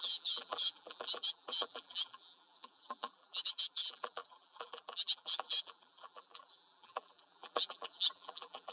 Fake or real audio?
fake